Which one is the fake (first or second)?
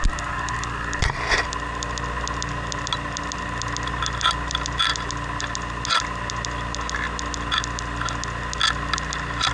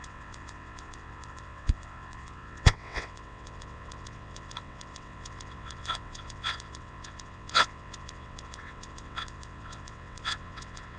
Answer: second